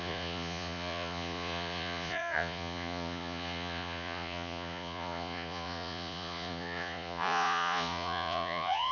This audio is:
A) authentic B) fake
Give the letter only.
B